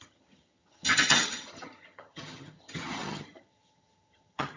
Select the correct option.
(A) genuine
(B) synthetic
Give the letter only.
B